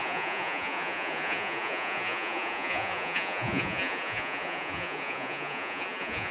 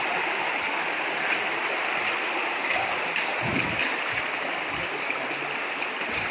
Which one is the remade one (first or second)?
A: first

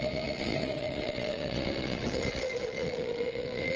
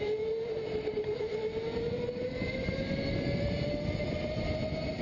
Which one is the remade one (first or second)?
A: first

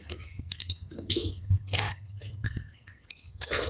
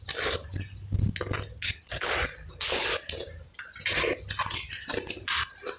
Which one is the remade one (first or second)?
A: first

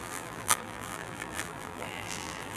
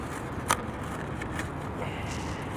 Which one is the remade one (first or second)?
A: first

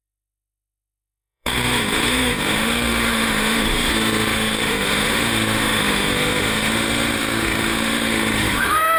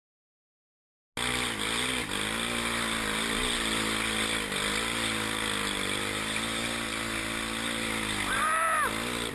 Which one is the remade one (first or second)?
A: first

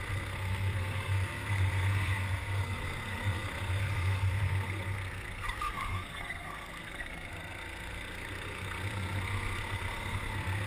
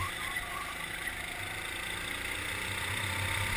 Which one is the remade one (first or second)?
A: first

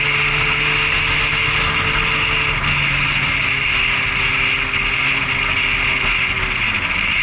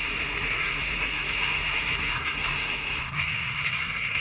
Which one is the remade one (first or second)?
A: second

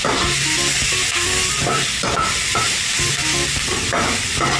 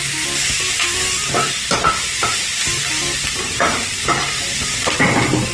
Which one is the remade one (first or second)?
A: second